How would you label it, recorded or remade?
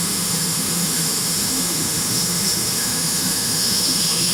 remade